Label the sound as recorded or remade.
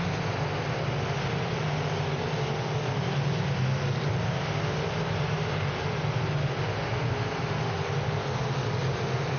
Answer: recorded